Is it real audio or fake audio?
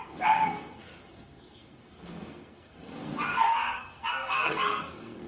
fake